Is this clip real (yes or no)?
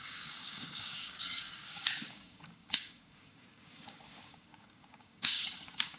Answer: no